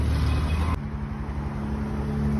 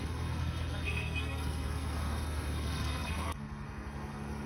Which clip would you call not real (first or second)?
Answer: second